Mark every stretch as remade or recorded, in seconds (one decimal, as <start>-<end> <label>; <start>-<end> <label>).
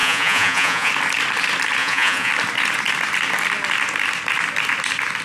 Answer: 0.0-0.9 remade; 0.9-1.8 recorded; 1.8-2.3 remade; 2.3-5.2 recorded